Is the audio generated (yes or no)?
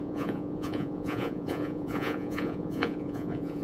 yes